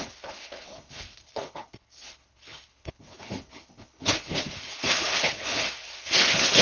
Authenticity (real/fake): fake